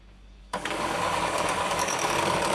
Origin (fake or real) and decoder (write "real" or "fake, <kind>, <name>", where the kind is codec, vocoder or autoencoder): fake, codec, DAC